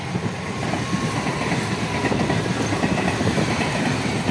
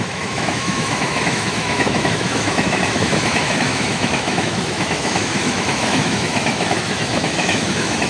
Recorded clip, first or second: first